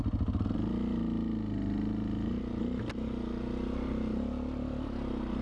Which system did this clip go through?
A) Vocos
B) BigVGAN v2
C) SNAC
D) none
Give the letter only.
D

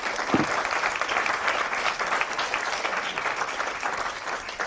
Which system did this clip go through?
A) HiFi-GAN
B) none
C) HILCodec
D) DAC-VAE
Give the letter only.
B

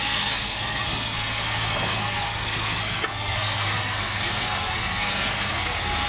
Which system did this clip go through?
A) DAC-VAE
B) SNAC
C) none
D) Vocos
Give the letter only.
B